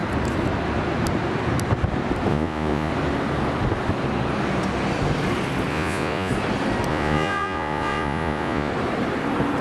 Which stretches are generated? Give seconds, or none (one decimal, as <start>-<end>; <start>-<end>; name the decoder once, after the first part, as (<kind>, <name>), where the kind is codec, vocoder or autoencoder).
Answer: 2.3-2.9 (vocoder, Vocos); 5.7-6.3; 6.9-8.7